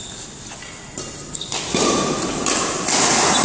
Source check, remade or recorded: recorded